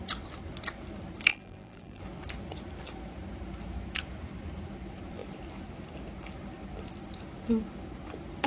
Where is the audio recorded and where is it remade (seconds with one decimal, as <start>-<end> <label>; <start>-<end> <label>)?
0.0-1.3 recorded; 1.3-2.0 remade; 2.0-8.5 recorded